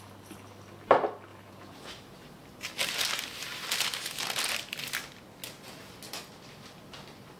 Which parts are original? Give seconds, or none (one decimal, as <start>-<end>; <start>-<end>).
0.0-1.3; 1.9-7.4